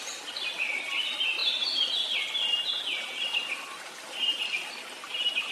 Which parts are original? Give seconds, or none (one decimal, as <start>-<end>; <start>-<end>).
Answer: 0.0-5.5